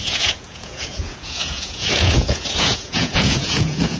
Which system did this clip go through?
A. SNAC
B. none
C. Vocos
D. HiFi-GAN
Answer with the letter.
C